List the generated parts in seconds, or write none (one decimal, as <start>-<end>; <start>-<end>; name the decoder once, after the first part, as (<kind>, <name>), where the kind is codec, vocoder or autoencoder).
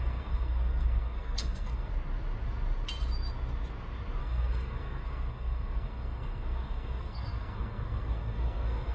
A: 0.0-1.9 (codec, SNAC); 4.2-8.9